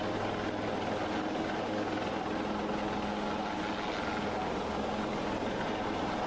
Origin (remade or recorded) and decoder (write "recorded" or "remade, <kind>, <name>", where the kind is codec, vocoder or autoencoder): recorded